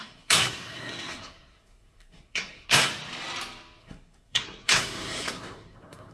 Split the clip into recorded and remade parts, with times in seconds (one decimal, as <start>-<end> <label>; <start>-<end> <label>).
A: 0.0-2.9 remade; 2.9-3.8 recorded; 3.8-6.1 remade